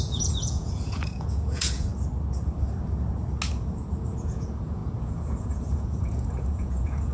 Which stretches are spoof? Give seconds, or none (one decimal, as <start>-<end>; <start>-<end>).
0.0-1.9; 4.2-7.1